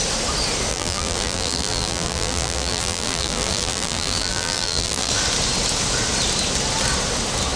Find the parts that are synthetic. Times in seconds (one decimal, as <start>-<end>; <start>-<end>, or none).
0.7-5.1